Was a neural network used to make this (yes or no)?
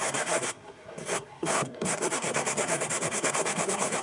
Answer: yes